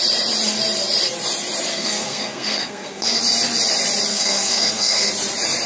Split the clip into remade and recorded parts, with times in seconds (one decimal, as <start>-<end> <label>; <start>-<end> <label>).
0.0-1.7 recorded; 1.7-3.2 remade; 3.2-4.1 recorded; 4.1-5.1 remade; 5.1-5.7 recorded